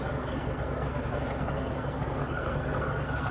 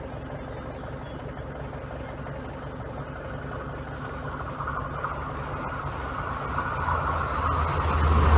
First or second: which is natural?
second